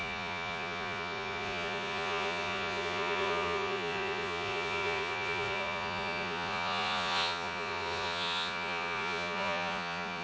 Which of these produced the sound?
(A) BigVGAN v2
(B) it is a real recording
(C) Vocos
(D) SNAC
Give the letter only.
C